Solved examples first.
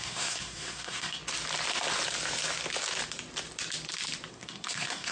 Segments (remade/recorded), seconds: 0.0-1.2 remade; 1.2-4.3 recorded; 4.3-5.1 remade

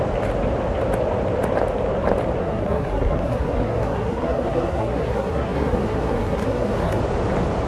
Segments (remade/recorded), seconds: 0.0-2.4 recorded; 2.4-7.0 remade; 7.0-7.7 recorded

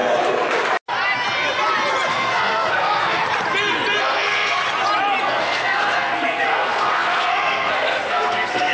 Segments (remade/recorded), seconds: 0.0-2.1 recorded; 2.1-3.2 remade; 3.2-4.0 recorded; 4.0-4.6 remade; 4.6-5.2 recorded; 5.2-8.7 remade

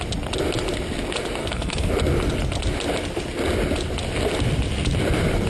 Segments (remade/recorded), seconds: 0.0-1.4 recorded; 1.4-1.9 remade; 1.9-5.5 recorded